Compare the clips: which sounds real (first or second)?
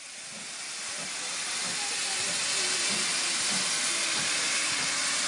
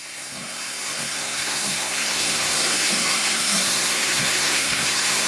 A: first